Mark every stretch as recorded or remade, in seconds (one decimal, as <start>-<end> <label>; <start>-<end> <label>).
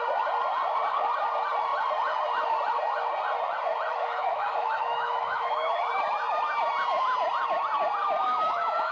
0.0-3.9 recorded; 3.9-5.9 remade; 5.9-8.2 recorded; 8.2-8.9 remade